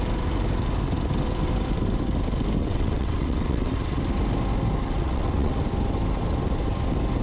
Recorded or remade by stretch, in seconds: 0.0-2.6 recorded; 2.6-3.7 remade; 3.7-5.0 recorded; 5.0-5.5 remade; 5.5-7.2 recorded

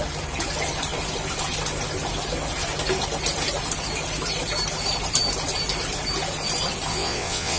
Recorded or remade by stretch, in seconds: 0.0-6.9 recorded; 6.9-7.6 remade

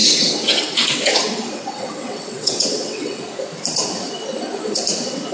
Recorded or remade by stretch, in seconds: 0.0-3.2 remade; 3.2-5.3 recorded